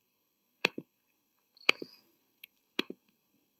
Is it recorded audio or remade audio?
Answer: remade